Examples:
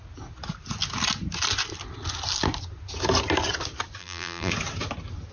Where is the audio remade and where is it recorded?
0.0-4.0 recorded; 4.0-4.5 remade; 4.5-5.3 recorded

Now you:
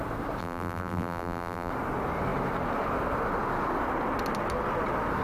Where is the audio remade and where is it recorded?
0.0-0.4 recorded; 0.4-1.7 remade; 1.7-5.2 recorded

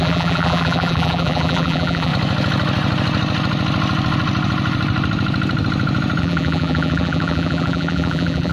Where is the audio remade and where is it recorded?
0.0-2.1 remade; 2.1-6.2 recorded; 6.2-8.5 remade

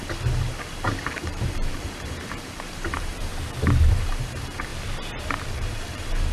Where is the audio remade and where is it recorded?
0.0-3.3 remade; 3.3-3.9 recorded; 3.9-4.7 remade; 4.7-5.5 recorded; 5.5-6.3 remade